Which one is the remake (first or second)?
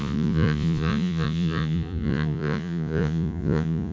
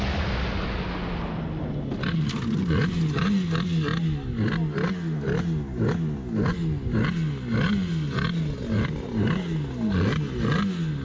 first